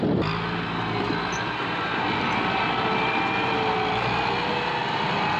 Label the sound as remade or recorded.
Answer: recorded